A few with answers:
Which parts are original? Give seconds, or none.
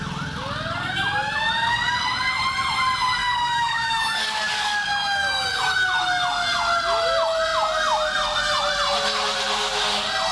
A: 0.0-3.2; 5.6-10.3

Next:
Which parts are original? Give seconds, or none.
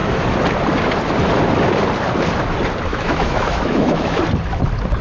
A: 0.0-2.9; 4.2-5.0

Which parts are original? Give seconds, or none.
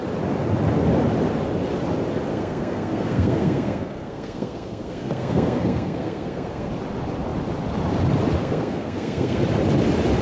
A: 0.0-2.3; 6.7-8.4; 9.4-10.2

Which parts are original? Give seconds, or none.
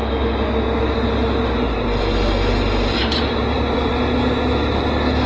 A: 0.0-3.2; 3.9-5.3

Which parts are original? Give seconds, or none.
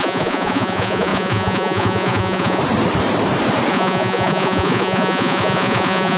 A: 2.6-3.7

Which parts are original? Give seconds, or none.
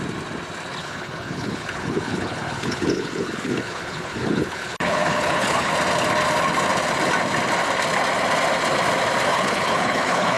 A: 0.0-0.8; 5.7-9.3